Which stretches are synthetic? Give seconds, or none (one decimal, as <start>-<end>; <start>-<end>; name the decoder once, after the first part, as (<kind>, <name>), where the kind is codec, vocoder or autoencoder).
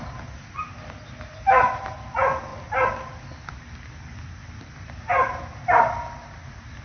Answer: none